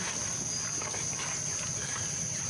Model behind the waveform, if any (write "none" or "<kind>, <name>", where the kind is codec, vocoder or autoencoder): none